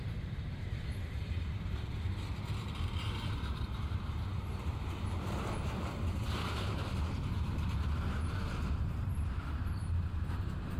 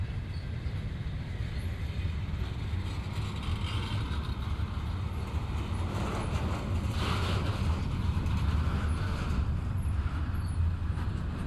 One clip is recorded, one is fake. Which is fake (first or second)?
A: first